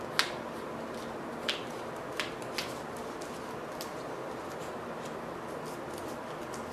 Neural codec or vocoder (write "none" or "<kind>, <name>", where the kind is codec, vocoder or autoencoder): none